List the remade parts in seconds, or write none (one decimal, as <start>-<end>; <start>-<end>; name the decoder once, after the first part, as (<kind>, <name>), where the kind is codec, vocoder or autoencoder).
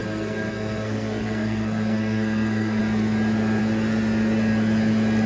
0.0-2.8 (codec, SNAC)